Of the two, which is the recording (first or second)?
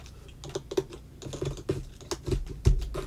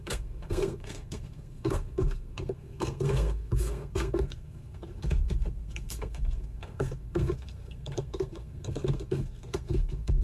first